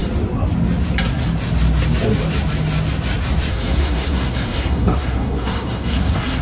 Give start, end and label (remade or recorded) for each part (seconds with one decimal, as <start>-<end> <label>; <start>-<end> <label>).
0.0-3.5 recorded; 3.5-6.4 remade

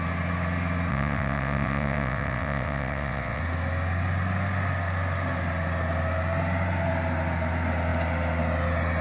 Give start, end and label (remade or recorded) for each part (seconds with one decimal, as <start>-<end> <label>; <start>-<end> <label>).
0.0-0.9 recorded; 0.9-3.4 remade; 3.4-9.0 recorded

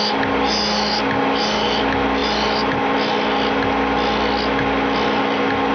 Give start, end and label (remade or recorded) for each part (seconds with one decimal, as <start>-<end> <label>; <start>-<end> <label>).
0.0-5.7 recorded

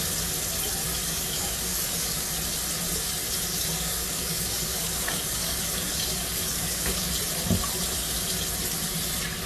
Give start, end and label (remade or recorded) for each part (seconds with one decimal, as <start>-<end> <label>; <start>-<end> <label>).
0.0-0.8 recorded; 0.8-2.3 remade; 2.3-3.5 recorded; 3.5-7.1 remade; 7.1-9.5 recorded

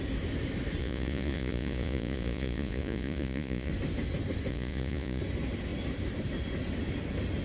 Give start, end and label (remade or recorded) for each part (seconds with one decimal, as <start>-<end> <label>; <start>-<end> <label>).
0.0-0.8 recorded; 0.8-3.7 remade; 3.7-4.5 recorded; 4.5-5.2 remade; 5.2-7.4 recorded